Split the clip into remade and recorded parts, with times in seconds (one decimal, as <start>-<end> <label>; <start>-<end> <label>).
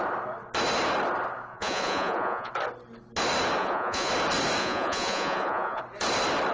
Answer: 0.0-1.5 recorded; 1.5-2.5 remade; 2.5-3.6 recorded; 3.6-4.1 remade; 4.1-4.6 recorded; 4.6-5.8 remade; 5.8-6.5 recorded